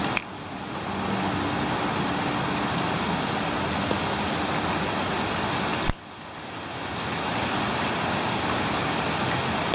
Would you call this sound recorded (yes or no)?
yes